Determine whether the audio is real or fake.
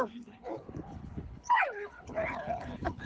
fake